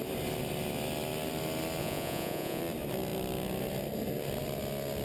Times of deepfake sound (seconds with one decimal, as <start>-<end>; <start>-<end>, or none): 1.8-2.6